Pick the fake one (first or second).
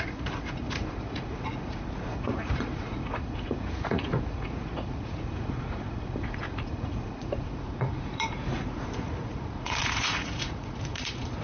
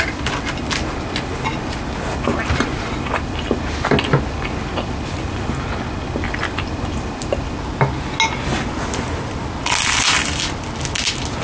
first